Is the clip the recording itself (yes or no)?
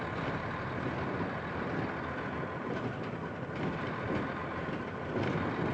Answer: yes